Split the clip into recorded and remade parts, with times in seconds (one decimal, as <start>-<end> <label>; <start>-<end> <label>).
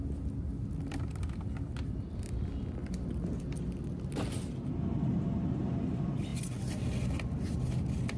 0.0-8.2 recorded